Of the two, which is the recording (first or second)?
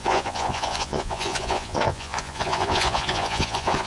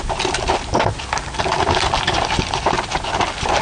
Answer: second